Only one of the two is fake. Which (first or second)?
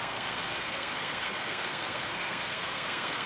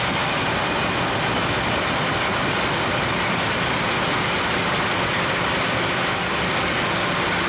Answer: first